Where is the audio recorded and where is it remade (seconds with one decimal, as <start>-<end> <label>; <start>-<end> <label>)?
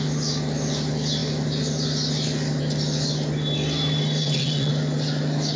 0.0-4.2 recorded; 4.2-4.7 remade; 4.7-5.6 recorded